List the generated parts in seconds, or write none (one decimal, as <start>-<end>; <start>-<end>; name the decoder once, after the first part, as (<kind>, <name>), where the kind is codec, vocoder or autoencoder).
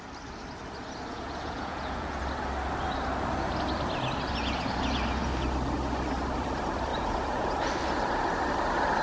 1.1-2.2 (vocoder, Vocos); 6.9-7.7